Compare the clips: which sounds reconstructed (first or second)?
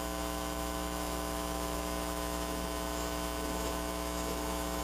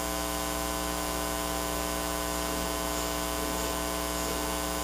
first